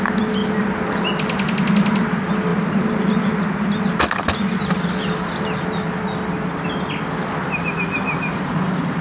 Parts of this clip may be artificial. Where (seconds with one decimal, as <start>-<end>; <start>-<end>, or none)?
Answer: none